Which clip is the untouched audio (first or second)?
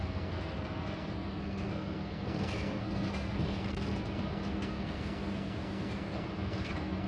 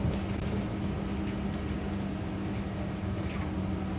second